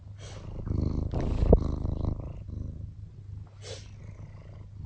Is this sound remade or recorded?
recorded